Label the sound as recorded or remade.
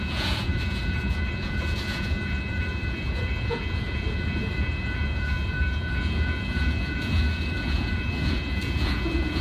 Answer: remade